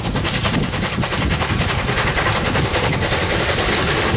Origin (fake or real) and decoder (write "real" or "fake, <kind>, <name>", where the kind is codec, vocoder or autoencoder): fake, vocoder, BigVGAN v2